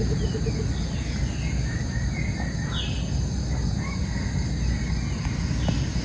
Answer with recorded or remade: recorded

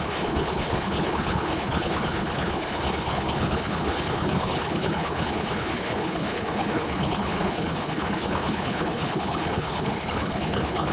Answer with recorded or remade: remade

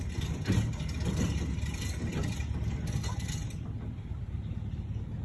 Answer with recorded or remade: recorded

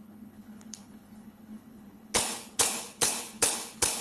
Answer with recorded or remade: remade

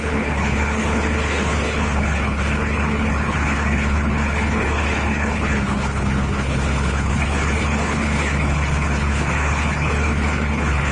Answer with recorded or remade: remade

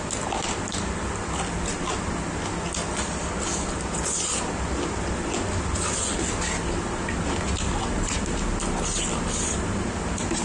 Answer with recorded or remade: recorded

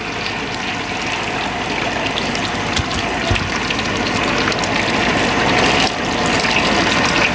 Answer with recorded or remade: recorded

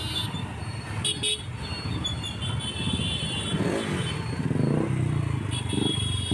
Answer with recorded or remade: recorded